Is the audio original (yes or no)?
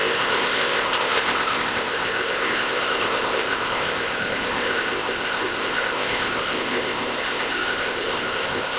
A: no